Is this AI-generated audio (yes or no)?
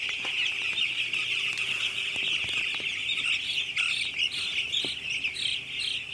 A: no